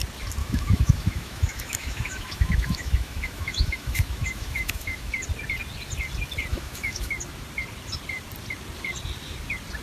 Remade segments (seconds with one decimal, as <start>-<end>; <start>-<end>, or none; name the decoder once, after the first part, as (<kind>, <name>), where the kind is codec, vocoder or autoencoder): 0.4-5.1 (autoencoder, DAC-VAE); 6.5-7.1